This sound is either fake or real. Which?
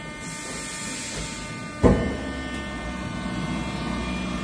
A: real